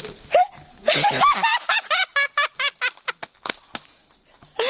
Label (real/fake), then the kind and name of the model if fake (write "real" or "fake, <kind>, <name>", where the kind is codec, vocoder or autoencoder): real